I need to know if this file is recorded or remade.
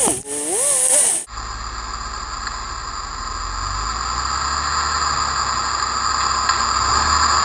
recorded